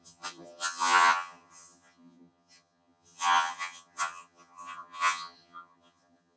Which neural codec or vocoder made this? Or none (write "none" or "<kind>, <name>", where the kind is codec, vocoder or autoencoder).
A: vocoder, HiFi-GAN